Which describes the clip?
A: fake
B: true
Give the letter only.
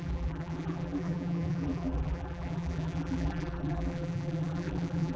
A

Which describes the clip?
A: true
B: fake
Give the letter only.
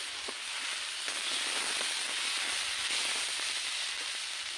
A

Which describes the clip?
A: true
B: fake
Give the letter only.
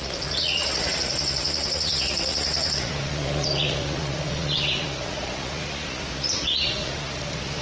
B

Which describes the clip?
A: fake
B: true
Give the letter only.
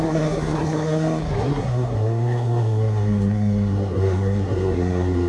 A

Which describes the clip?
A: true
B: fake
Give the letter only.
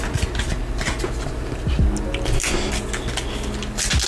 A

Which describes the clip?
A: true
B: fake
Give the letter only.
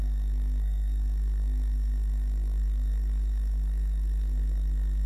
B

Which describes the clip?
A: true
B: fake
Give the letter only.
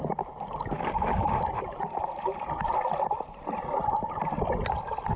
A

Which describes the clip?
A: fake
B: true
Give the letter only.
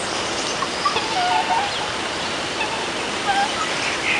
B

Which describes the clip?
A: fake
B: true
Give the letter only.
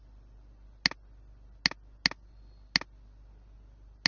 B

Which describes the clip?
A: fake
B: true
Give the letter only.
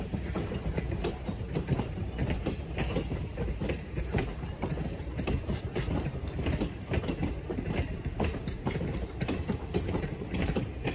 A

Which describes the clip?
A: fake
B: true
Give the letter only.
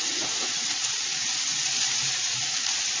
A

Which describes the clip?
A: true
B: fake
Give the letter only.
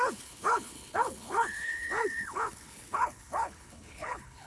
B